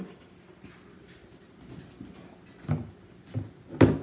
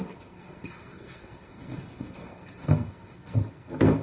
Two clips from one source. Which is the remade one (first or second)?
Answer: second